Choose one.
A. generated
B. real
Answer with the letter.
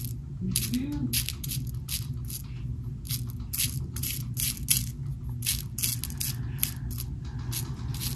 B